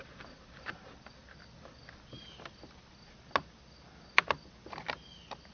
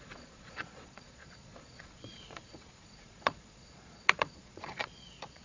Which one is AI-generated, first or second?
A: second